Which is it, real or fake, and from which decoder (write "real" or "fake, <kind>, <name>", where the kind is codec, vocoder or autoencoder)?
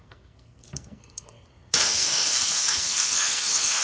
fake, codec, SNAC